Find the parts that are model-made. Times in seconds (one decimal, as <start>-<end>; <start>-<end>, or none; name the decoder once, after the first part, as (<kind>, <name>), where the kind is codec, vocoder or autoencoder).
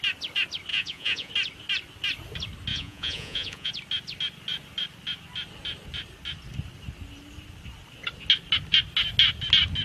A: 0.7-1.3 (vocoder, Vocos); 2.7-3.7